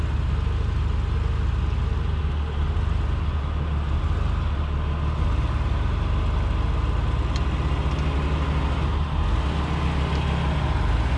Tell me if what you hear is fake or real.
real